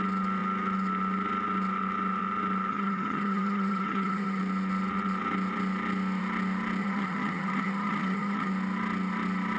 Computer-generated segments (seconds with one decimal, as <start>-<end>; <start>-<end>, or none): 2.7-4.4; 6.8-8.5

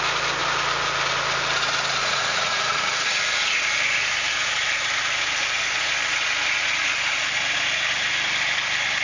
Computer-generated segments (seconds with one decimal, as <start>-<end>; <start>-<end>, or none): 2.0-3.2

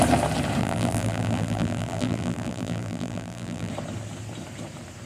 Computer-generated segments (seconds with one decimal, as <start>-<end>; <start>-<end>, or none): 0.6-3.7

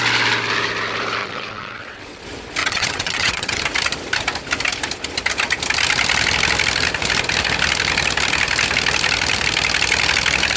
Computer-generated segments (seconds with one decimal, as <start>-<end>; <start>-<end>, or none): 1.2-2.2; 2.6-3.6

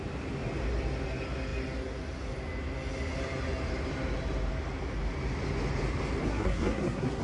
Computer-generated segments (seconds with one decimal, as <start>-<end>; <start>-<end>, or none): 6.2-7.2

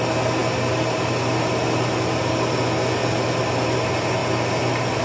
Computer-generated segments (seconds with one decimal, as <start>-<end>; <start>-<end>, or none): none